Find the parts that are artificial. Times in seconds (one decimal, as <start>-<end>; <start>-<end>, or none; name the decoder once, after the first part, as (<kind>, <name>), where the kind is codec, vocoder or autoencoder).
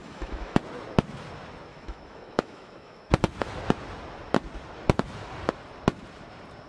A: 0.0-0.6 (autoencoder, DAC-VAE); 1.7-3.1